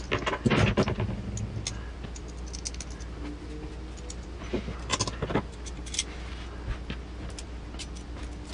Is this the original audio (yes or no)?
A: yes